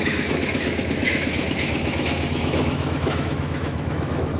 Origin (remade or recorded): remade